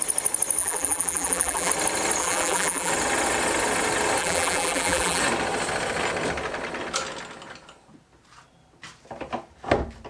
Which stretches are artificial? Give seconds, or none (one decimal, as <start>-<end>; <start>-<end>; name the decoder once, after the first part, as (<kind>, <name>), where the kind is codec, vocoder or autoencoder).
0.6-1.7 (vocoder, BigVGAN v2); 2.2-2.9; 4.2-5.2